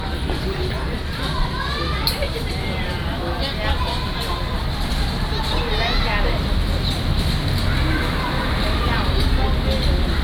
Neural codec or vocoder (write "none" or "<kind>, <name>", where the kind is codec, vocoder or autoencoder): none